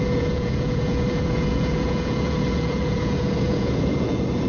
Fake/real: fake